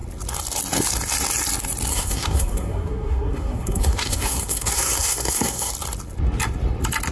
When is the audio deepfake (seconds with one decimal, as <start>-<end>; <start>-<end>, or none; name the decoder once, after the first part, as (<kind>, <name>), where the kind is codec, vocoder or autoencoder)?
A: 1.9-5.7 (codec, SNAC)